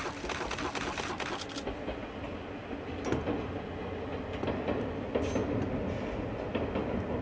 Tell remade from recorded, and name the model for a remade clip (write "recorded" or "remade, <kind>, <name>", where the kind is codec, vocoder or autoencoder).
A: recorded